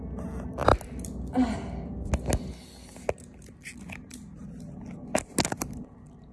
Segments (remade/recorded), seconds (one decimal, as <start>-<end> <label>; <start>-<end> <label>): 0.0-6.3 recorded